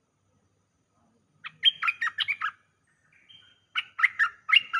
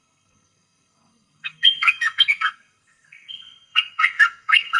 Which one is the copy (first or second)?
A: second